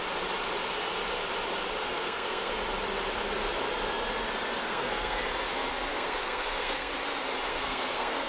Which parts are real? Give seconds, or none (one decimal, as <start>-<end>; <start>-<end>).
0.0-1.8; 2.5-4.6; 5.2-5.9; 6.9-7.5